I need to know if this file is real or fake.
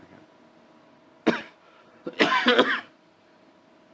real